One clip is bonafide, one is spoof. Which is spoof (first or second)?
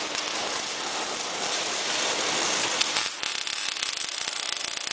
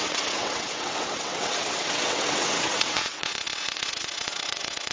second